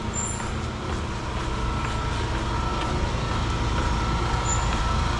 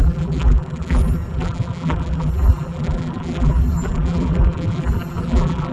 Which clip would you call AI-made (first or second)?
second